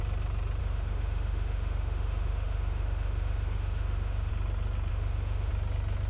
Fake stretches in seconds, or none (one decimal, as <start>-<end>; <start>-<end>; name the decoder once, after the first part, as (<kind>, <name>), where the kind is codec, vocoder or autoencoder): 0.6-4.3 (autoencoder, DAC-VAE); 4.9-5.5